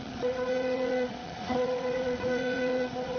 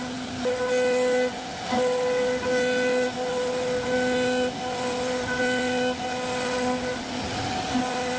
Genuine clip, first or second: second